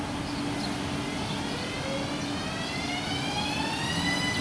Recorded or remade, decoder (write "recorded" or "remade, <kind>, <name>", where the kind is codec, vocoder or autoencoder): recorded